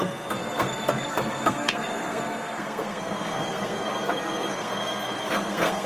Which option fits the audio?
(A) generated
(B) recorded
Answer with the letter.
A